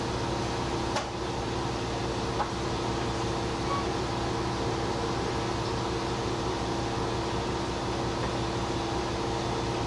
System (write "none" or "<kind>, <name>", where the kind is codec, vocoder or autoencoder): none